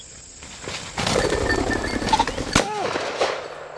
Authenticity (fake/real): real